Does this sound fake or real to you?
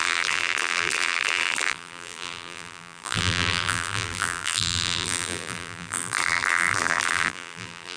fake